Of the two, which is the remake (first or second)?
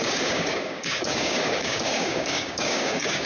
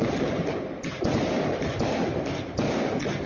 first